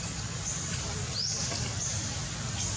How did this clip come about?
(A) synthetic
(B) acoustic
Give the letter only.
B